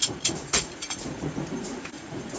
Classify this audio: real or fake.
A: fake